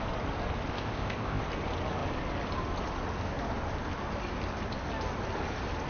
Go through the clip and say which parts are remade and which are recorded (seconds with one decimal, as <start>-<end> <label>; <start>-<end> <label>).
0.0-0.7 recorded; 0.7-1.4 remade; 1.4-5.9 recorded